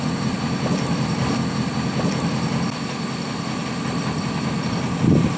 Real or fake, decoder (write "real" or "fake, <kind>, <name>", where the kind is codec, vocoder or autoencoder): fake, vocoder, BigVGAN v2